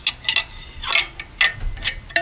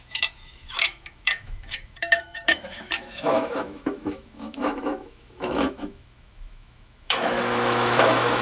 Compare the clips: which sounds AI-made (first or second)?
second